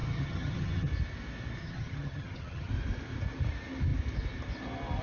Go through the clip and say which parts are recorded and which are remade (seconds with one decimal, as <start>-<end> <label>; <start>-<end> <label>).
0.0-0.9 remade; 0.9-1.6 recorded; 1.6-2.7 remade; 2.7-5.0 recorded

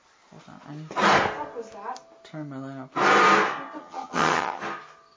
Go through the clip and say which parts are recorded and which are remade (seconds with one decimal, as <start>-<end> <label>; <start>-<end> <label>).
0.0-3.8 recorded; 3.8-4.6 remade; 4.6-5.2 recorded

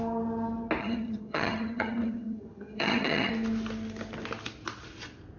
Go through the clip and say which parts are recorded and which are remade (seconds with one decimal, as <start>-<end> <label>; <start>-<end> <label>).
0.0-0.8 recorded; 0.8-3.3 remade; 3.3-5.4 recorded

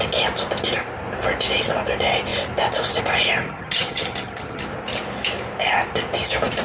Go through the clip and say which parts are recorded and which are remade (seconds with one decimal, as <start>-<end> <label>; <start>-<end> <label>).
0.0-3.4 recorded; 3.4-4.6 remade; 4.6-6.6 recorded

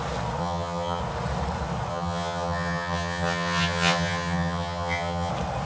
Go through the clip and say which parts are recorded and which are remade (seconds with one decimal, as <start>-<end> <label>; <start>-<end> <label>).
0.0-0.4 recorded; 0.4-1.0 remade; 1.0-1.9 recorded; 1.9-5.3 remade; 5.3-5.7 recorded

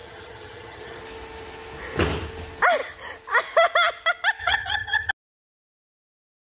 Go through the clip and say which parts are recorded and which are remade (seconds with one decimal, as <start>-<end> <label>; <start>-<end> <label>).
0.0-1.0 remade; 1.0-4.4 recorded; 4.4-5.1 remade; 5.1-6.4 recorded

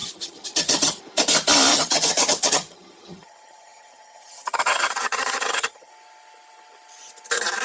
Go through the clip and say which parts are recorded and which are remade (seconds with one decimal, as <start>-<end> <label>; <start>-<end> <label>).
0.0-1.0 remade; 1.0-1.7 recorded; 1.7-5.9 remade; 5.9-7.6 recorded